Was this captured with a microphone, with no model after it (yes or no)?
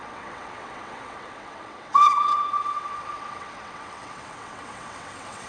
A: no